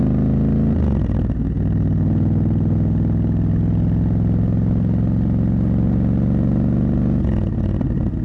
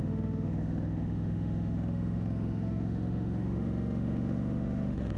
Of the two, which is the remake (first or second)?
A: second